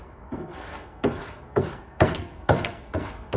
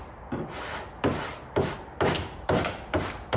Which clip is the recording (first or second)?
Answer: second